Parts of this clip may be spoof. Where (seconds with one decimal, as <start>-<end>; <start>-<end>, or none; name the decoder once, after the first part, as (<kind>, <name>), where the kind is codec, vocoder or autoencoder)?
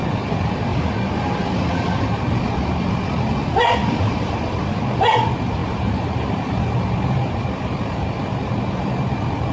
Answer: 3.8-4.7 (vocoder, BigVGAN v2); 5.6-6.3